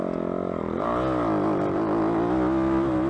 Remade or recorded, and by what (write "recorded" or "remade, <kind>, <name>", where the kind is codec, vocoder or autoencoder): recorded